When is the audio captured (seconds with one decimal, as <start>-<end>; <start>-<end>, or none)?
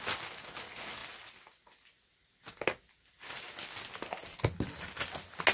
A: 0.0-5.5